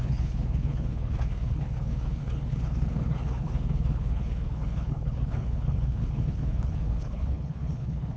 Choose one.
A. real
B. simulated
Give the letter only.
B